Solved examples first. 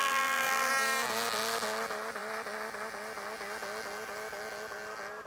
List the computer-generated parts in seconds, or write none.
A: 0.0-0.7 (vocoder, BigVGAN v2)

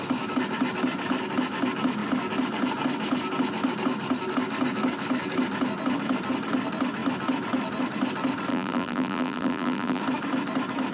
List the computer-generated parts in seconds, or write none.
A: 8.5-10.0 (vocoder, BigVGAN v2)

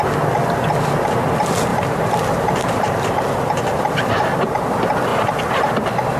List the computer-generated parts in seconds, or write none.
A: 1.7-3.2 (vocoder, BigVGAN v2)

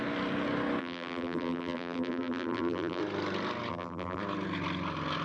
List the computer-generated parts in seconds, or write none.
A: 0.8-3.0 (vocoder, BigVGAN v2); 3.7-4.2